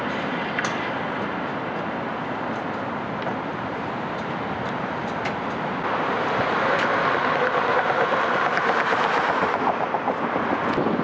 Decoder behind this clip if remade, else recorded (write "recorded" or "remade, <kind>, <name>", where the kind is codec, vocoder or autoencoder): recorded